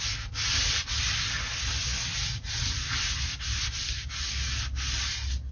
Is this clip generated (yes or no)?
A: no